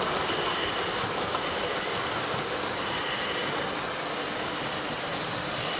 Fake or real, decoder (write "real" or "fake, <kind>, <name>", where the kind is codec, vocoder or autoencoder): real